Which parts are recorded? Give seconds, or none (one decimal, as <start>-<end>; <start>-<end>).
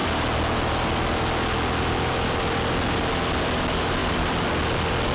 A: 0.0-5.1